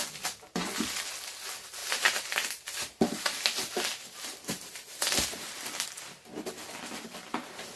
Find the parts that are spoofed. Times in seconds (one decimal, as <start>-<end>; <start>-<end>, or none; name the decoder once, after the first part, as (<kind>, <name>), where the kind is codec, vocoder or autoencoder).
1.8-6.0 (vocoder, BigVGAN v2)